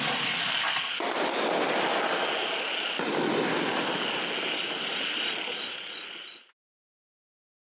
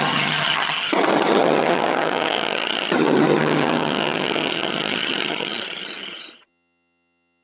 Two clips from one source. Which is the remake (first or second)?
second